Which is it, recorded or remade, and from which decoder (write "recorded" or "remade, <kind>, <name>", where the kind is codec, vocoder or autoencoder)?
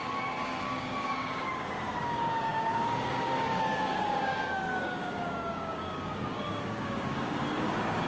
remade, codec, DAC